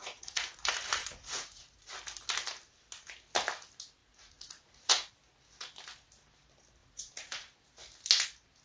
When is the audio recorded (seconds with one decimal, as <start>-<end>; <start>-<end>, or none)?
0.6-1.0; 1.9-4.0; 5.1-6.8; 7.6-8.6

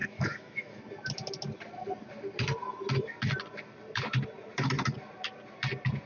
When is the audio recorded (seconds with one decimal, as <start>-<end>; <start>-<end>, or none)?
0.8-6.1